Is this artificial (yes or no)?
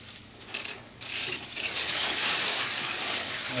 yes